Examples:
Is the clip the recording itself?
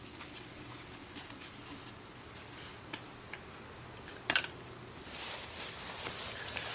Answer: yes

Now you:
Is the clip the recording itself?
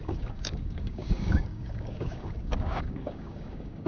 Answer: no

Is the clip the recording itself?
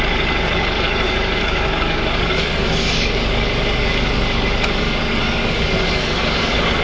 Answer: no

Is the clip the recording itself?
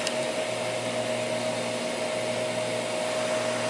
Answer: yes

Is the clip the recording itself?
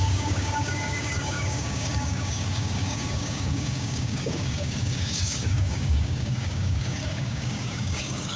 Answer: no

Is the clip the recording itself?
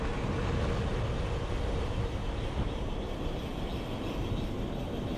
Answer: yes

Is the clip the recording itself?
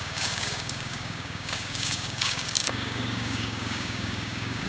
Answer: no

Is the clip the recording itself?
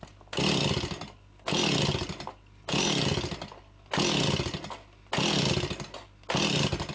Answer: yes